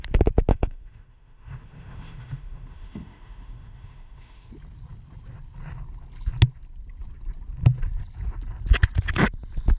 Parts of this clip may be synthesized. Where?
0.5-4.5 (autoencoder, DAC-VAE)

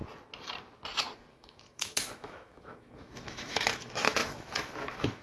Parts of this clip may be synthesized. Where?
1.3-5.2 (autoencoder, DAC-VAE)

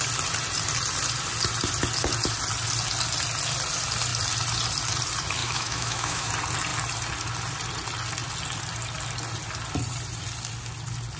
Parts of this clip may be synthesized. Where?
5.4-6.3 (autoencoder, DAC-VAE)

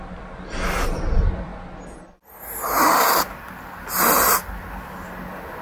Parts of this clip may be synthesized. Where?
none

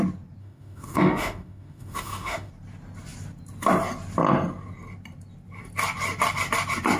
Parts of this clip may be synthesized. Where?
0.4-2.5 (autoencoder, DAC-VAE)

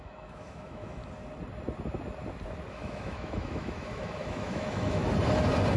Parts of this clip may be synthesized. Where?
0.0-1.0 (autoencoder, DAC-VAE); 2.7-5.0